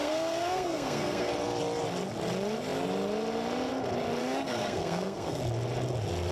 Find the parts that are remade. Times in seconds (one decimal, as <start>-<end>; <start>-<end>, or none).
0.0-1.3; 4.2-5.4